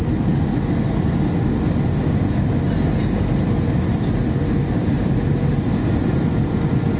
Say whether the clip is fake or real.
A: real